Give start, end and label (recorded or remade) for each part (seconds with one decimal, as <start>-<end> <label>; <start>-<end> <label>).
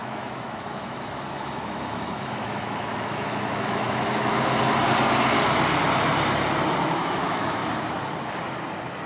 0.0-4.3 remade; 4.3-7.0 recorded; 7.0-7.6 remade; 7.6-9.1 recorded